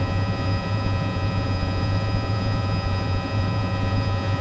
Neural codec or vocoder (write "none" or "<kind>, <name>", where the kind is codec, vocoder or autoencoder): vocoder, Vocos